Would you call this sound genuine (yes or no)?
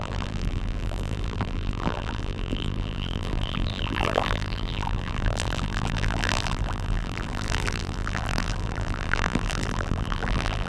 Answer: no